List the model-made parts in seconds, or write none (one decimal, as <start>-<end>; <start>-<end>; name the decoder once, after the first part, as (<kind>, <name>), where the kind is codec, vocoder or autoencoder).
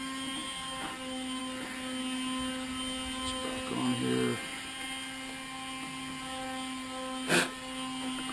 none